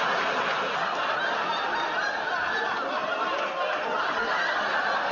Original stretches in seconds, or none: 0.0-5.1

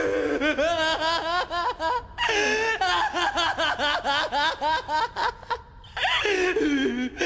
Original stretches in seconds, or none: 0.0-7.3

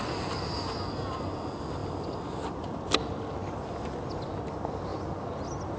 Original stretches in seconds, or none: 0.0-5.8

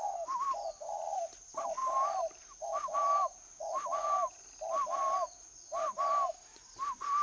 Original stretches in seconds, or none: 0.0-7.2

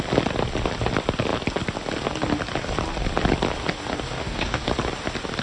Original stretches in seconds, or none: 0.0-4.2; 4.7-5.4

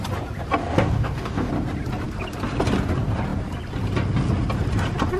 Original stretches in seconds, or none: 0.0-0.6; 1.5-5.2

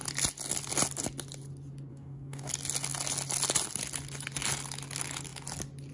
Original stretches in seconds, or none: 0.0-1.9; 2.5-5.9

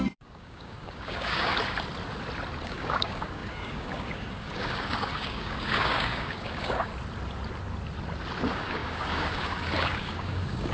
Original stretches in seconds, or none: 1.5-2.6; 6.9-8.4